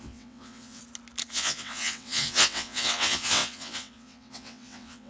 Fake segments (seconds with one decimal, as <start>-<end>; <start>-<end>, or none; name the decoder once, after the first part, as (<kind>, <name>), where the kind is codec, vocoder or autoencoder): 0.0-0.8 (vocoder, WaveNeXt); 1.3-5.1